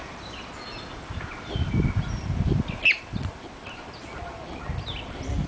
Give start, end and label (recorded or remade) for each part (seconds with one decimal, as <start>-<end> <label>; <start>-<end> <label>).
0.0-5.5 recorded